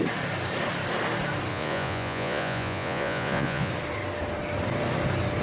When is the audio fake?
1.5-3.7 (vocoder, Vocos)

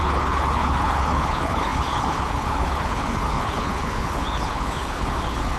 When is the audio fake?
0.0-5.6 (codec, HILCodec)

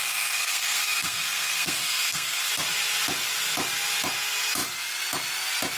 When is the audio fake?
0.0-2.5 (codec, SNAC)

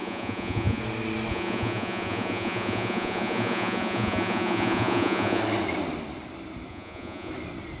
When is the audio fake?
0.0-0.8 (vocoder, Vocos); 1.3-5.4; 6.7-7.3